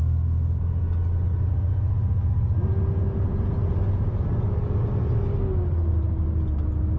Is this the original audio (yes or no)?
yes